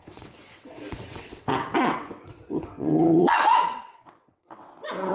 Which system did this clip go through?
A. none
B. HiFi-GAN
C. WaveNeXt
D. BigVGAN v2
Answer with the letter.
C